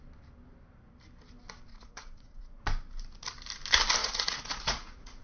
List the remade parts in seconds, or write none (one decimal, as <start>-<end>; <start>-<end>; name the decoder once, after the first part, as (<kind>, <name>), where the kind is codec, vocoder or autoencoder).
1.7-2.6 (vocoder, Vocos); 4.0-5.2